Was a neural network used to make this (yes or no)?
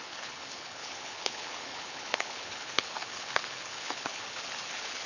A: yes